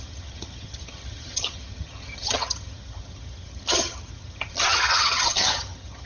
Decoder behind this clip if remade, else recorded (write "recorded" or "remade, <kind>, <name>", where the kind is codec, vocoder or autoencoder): remade, vocoder, HiFi-GAN